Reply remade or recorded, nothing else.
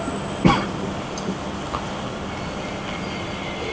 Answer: recorded